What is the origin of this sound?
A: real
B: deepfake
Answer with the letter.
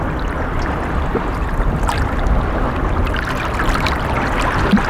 A